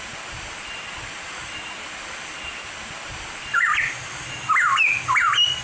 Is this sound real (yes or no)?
yes